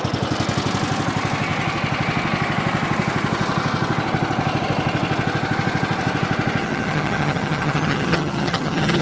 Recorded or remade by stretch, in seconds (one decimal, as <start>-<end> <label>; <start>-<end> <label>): 0.0-6.6 recorded; 6.6-9.0 remade